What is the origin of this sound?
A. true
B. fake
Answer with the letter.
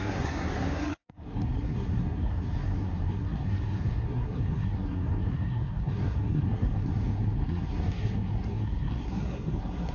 B